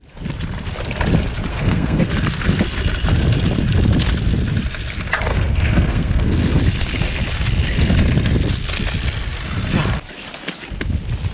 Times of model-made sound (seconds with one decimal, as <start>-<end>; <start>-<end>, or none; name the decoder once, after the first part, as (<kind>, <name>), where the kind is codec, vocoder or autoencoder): 1.5-2.1 (codec, SNAC); 5.3-6.6